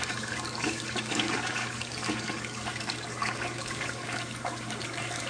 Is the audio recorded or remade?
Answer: remade